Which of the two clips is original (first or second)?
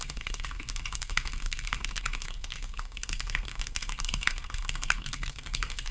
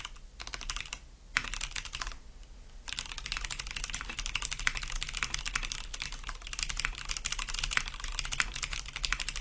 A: second